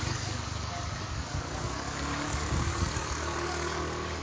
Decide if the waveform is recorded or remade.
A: remade